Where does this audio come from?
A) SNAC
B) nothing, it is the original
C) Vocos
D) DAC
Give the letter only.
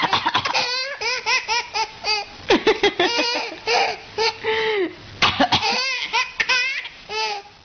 B